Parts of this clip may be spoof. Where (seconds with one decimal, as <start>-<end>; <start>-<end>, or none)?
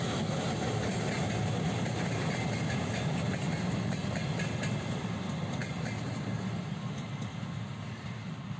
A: none